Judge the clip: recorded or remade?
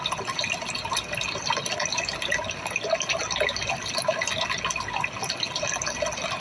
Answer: recorded